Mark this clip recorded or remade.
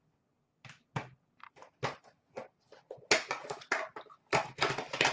recorded